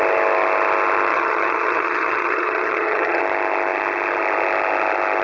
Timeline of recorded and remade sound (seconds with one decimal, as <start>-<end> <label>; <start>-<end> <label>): 0.0-1.1 recorded; 1.1-3.2 remade; 3.2-5.2 recorded